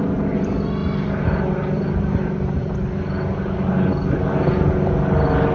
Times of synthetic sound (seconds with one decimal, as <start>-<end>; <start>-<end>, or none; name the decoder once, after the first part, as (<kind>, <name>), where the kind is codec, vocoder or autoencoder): none